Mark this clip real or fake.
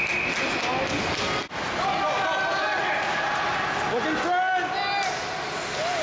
real